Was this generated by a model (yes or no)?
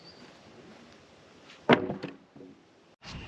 no